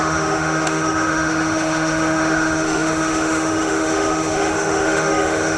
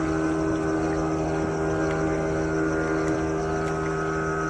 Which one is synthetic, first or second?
first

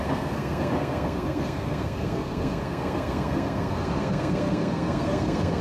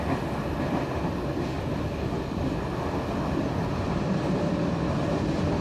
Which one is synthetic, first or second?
first